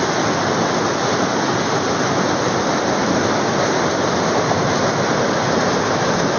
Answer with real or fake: real